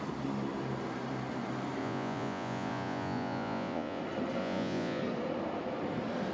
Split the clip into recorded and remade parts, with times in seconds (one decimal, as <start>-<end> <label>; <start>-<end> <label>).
0.0-1.8 recorded; 1.8-4.0 remade; 4.0-4.4 recorded; 4.4-5.0 remade; 5.0-6.3 recorded